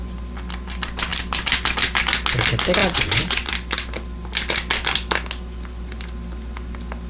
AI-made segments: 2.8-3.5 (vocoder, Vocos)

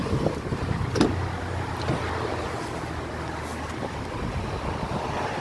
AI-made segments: none

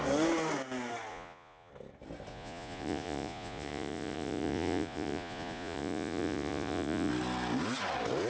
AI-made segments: 1.1-1.7 (vocoder, Vocos); 2.3-7.1

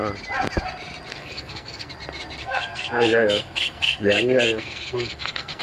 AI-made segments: 1.1-1.9 (codec, SNAC); 2.4-5.6

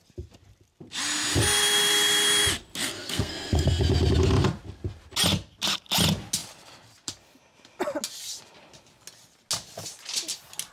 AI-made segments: 2.8-3.8 (codec, SNAC)

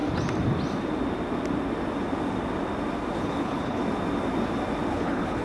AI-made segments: 3.2-3.8 (codec, HILCodec); 4.9-5.4

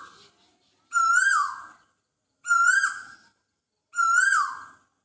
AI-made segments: 1.4-3.5 (vocoder, BigVGAN v2)

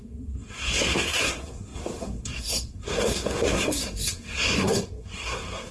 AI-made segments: 0.0-5.7 (codec, SNAC)